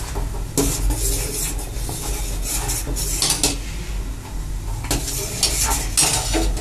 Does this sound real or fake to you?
real